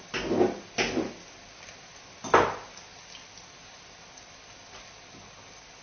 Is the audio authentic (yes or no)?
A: yes